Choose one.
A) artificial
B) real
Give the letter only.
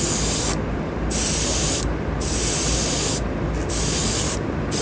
B